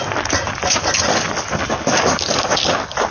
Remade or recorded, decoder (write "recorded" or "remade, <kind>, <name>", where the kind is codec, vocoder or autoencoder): recorded